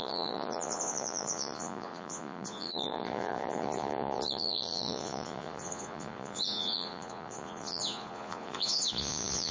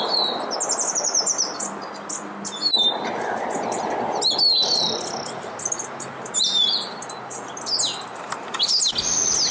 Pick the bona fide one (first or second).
second